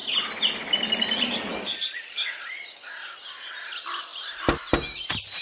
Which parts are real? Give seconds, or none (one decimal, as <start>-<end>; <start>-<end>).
0.0-5.4